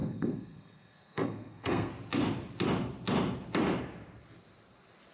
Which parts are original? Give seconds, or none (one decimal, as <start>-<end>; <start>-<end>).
1.9-5.1